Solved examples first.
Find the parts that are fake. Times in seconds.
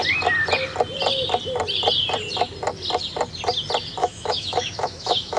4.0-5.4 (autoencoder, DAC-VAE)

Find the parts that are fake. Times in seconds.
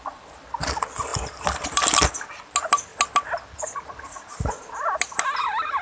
none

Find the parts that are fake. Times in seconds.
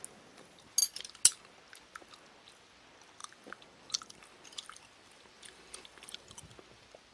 3.2-6.4 (vocoder, BigVGAN v2)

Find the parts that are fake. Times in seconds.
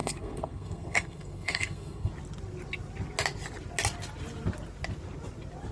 0.0-2.1 (codec, SNAC)